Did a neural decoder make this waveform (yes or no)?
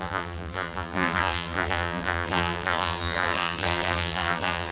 yes